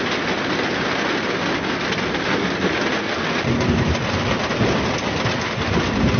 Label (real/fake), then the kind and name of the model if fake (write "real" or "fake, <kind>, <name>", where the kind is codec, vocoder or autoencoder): real